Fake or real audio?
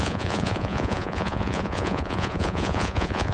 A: fake